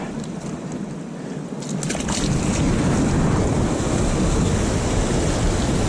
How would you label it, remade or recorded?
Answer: recorded